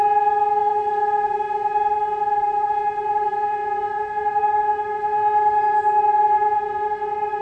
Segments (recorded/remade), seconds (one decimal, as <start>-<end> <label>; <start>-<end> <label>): 0.0-7.4 recorded